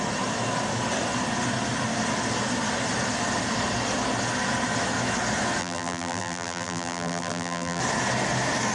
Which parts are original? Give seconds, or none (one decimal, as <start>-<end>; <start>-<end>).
0.0-5.6; 7.8-8.7